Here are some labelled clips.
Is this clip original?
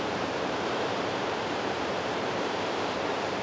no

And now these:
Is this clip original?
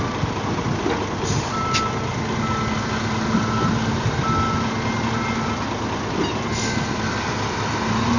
yes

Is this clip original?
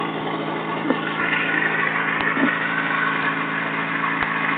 yes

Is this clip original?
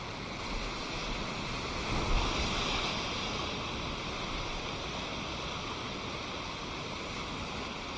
yes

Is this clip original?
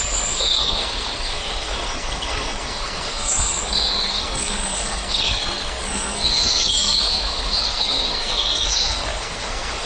no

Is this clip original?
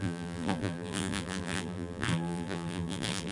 no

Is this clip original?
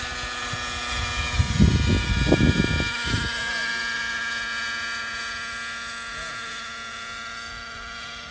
yes